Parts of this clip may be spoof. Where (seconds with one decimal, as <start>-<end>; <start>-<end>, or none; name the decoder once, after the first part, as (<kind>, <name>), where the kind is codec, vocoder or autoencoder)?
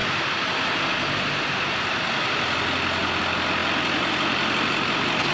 none